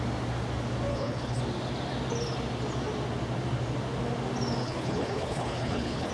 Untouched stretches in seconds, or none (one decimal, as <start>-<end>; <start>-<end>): 0.0-0.9; 1.4-4.6